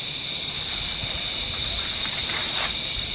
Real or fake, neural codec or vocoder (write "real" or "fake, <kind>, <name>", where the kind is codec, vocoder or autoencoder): real